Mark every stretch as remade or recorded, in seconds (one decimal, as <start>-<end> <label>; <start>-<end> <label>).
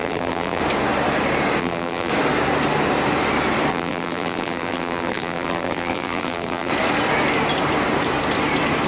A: 0.0-0.6 remade; 0.6-1.6 recorded; 1.6-2.1 remade; 2.1-3.7 recorded; 3.7-6.7 remade; 6.7-8.9 recorded